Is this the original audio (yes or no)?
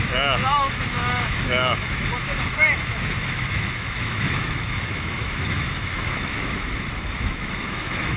no